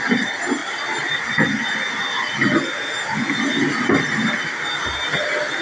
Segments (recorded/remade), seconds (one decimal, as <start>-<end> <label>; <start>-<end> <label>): 0.0-5.6 recorded